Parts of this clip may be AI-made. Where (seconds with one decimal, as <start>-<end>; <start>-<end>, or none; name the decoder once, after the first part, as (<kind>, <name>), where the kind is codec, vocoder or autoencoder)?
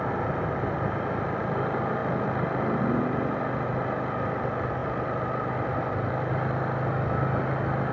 none